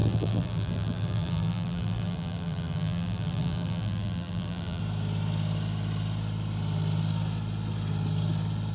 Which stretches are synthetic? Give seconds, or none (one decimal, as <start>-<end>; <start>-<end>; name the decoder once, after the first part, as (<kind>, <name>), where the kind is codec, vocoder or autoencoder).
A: 0.0-4.8 (vocoder, BigVGAN v2)